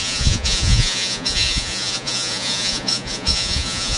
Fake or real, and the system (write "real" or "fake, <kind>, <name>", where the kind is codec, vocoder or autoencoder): fake, vocoder, Vocos